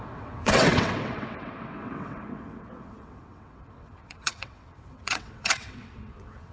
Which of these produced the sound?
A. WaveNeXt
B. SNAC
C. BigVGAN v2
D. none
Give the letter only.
A